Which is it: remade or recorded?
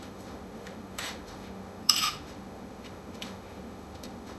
remade